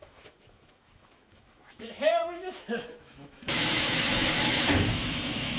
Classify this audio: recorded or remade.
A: remade